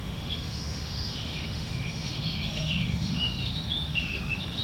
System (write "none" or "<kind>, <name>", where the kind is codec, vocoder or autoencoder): autoencoder, DAC-VAE